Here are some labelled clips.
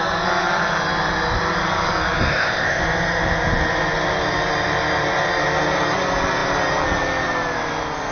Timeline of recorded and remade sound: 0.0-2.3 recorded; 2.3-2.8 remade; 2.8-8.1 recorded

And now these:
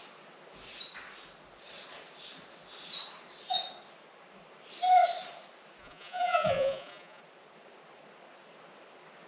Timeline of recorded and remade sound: 0.0-5.8 recorded; 5.8-7.2 remade; 7.2-9.3 recorded

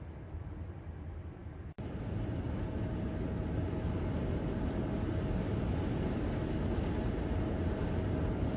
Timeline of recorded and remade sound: 0.0-8.6 recorded

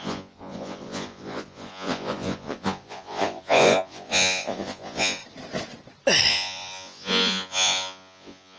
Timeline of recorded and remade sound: 0.0-5.2 remade; 5.2-6.3 recorded; 6.3-8.6 remade

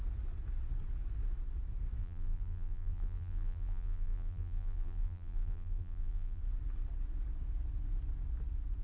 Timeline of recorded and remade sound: 0.0-2.0 recorded; 2.0-6.4 remade; 6.4-8.8 recorded

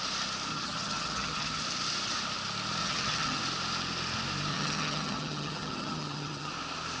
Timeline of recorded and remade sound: 0.0-0.5 recorded; 0.5-1.6 remade; 1.6-2.8 recorded; 2.8-3.4 remade; 3.4-4.5 recorded; 4.5-6.5 remade; 6.5-7.0 recorded

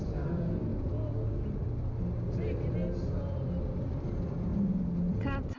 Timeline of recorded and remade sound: 0.0-0.7 remade; 0.7-3.8 recorded; 3.8-4.5 remade; 4.5-5.1 recorded; 5.1-5.6 remade

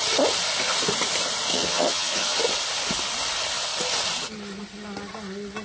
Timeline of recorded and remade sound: 0.0-1.5 recorded; 1.5-2.4 remade; 2.4-5.6 recorded